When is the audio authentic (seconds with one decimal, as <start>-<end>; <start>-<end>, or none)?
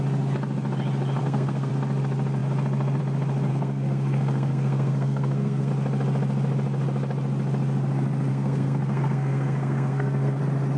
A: 0.0-1.2; 1.7-3.5; 5.7-8.3; 10.4-10.8